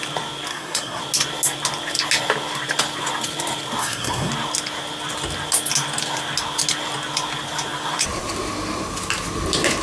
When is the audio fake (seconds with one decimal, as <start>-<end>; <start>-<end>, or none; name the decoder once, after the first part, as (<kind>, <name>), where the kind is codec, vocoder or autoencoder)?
0.5-1.0 (codec, SNAC); 3.8-4.3